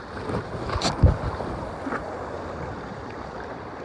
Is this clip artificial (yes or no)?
no